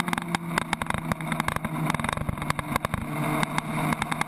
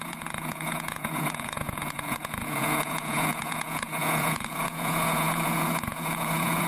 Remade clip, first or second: second